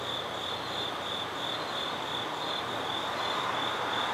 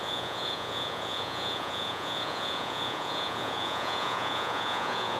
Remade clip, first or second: second